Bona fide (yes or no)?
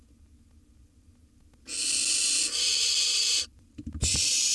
yes